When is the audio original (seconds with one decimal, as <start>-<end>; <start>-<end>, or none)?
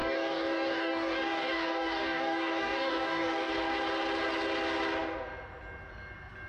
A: 3.5-6.5